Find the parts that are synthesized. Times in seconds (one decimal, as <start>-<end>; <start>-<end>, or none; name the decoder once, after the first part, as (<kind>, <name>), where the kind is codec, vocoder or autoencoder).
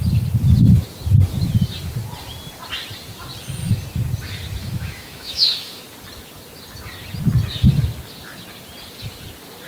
4.6-5.8 (autoencoder, DAC-VAE)